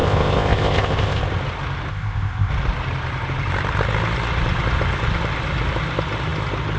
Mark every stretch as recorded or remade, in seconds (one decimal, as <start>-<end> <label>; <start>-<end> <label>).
0.0-1.2 remade; 1.2-1.9 recorded; 1.9-2.5 remade; 2.5-6.8 recorded